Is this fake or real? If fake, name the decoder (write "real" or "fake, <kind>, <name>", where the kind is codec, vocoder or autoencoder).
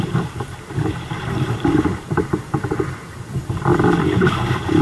fake, vocoder, BigVGAN v2